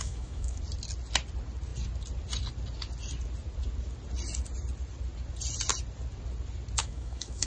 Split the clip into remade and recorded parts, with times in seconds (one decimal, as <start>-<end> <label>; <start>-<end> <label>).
0.0-0.6 remade; 0.6-6.8 recorded; 6.8-7.5 remade